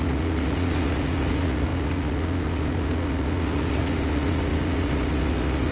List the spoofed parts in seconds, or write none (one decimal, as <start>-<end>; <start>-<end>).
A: 0.0-5.7